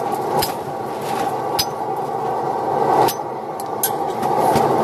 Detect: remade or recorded recorded